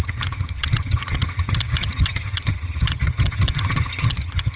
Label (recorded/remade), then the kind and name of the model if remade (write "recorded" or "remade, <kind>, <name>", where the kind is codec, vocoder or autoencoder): remade, vocoder, HiFi-GAN